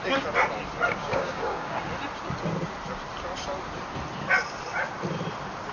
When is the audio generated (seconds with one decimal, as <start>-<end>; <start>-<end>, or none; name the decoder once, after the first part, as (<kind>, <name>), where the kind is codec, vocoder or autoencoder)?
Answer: 1.0-1.9 (codec, DAC)

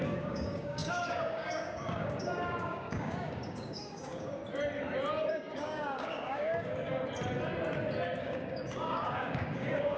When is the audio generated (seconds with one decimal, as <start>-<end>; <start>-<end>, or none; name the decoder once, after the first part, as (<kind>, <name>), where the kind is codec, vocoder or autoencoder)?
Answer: 0.0-4.4 (codec, DAC); 5.3-7.0; 8.2-10.0

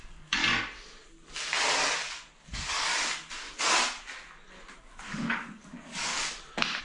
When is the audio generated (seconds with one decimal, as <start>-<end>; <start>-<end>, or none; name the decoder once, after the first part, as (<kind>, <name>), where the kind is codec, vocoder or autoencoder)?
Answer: 0.0-0.4 (codec, DAC); 2.4-2.9; 4.8-6.1

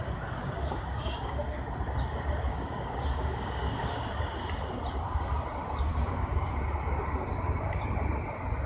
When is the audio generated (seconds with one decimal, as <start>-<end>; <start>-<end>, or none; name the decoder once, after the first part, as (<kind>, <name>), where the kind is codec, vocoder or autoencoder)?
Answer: 0.4-1.4 (codec, DAC); 2.5-4.1; 5.9-6.5

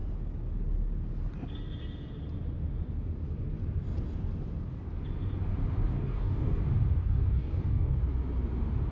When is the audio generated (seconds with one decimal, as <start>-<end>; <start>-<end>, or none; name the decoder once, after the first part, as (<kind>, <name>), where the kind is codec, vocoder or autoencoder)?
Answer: 5.9-6.6 (codec, DAC); 7.0-8.0